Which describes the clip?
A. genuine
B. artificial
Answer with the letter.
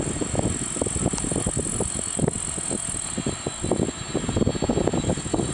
A